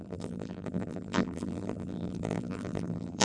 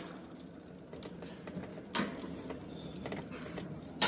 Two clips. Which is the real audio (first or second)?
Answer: second